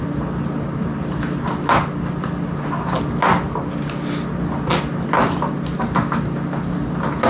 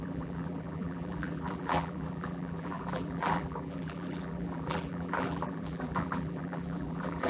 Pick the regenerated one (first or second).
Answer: second